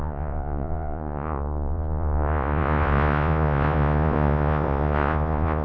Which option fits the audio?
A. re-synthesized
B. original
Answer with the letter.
A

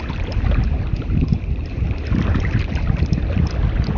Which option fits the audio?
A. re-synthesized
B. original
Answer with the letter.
B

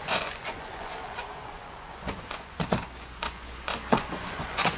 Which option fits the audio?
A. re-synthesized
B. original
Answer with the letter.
A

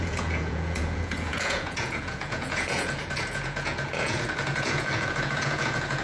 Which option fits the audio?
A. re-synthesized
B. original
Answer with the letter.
A